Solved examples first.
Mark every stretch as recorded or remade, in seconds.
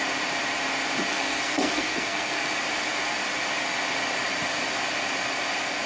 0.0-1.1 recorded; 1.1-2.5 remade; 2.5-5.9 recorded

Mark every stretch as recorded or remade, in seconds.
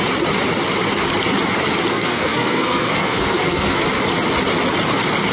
0.0-1.9 recorded; 1.9-3.8 remade; 3.8-5.3 recorded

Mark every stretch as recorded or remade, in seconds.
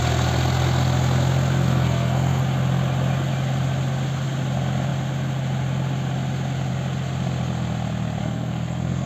0.0-1.6 recorded; 1.6-2.4 remade; 2.4-8.2 recorded; 8.2-9.1 remade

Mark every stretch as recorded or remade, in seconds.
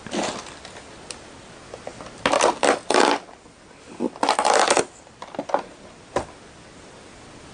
0.0-7.5 recorded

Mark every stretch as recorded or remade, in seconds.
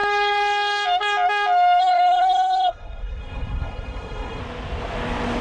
0.0-1.8 recorded; 1.8-4.4 remade; 4.4-5.4 recorded